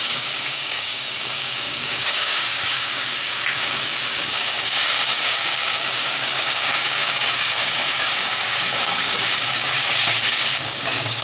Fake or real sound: fake